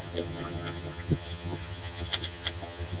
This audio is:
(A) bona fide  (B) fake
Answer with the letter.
B